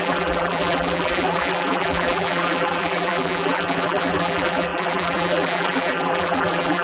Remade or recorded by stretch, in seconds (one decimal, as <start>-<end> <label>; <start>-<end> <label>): 0.0-6.8 remade